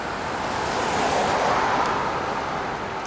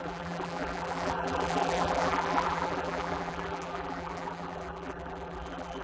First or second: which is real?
first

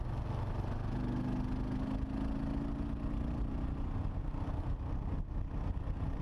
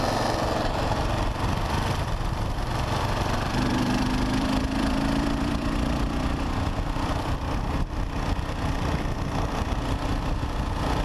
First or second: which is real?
first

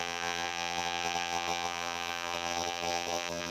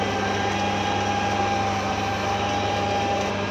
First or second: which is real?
second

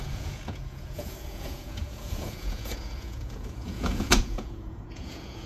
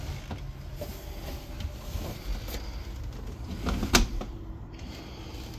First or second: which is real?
second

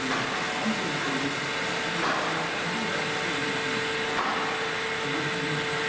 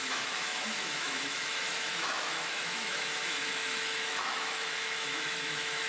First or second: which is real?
first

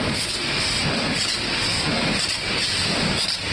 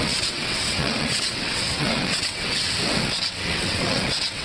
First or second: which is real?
first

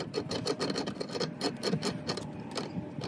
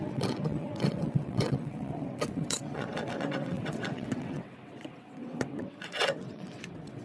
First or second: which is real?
first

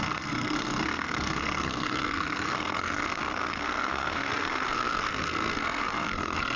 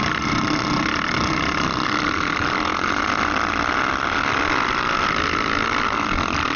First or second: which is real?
second